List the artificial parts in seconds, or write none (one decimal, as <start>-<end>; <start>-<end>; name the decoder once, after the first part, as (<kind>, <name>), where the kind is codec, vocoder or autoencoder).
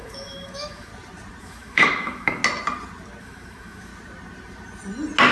0.0-0.9 (autoencoder, DAC-VAE); 1.4-2.4; 3.2-3.9